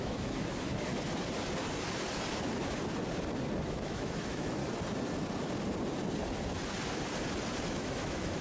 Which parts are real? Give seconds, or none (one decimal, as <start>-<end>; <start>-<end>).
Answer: 0.9-3.6; 4.6-7.7